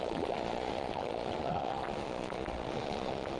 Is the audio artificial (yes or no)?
yes